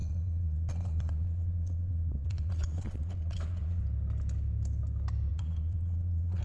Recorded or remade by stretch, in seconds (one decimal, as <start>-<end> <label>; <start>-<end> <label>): 0.0-3.8 remade; 3.8-5.3 recorded; 5.3-6.4 remade